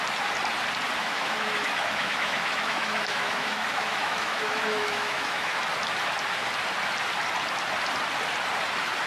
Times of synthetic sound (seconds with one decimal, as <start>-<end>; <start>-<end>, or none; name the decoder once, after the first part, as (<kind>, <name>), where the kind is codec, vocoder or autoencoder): 1.0-5.6 (autoencoder, DAC-VAE)